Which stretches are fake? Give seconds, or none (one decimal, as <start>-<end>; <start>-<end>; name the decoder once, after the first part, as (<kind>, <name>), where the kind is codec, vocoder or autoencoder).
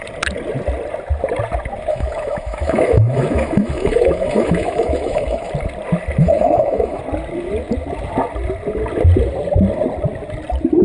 1.9-5.5 (autoencoder, DAC-VAE); 6.2-7.0